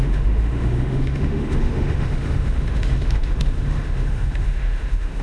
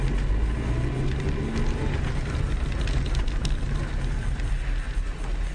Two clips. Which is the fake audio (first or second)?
first